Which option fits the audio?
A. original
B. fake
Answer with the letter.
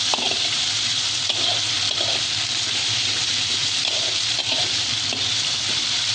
B